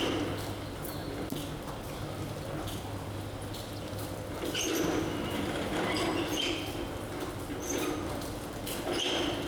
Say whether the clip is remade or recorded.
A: recorded